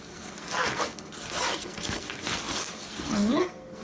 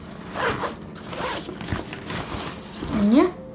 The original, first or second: second